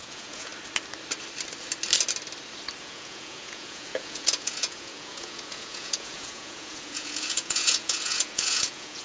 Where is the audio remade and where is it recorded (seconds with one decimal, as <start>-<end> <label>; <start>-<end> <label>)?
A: 0.0-0.5 remade; 0.5-2.8 recorded; 2.8-9.0 remade